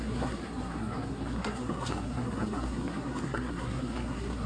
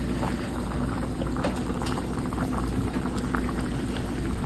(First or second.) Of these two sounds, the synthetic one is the first